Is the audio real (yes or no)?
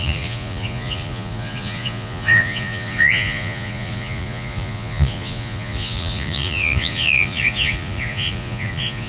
no